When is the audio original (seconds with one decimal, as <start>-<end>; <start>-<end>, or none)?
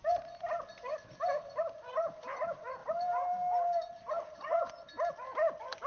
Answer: 0.0-5.9